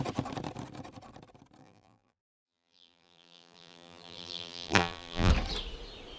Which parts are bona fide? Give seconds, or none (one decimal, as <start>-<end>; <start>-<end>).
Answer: 0.0-1.6; 5.3-6.2